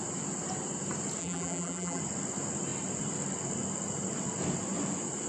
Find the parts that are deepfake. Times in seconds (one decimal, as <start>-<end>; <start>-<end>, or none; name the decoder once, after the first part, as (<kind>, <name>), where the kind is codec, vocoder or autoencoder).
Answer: 1.2-2.0 (vocoder, BigVGAN v2)